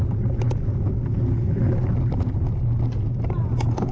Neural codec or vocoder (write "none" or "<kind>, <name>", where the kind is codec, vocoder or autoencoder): none